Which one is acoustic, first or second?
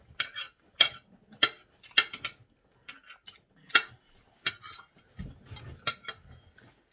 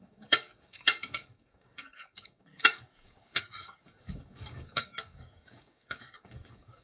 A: first